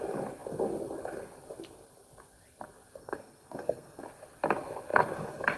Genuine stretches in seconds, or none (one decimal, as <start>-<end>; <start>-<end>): 0.0-3.0; 4.0-5.6